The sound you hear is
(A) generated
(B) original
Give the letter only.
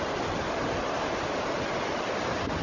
B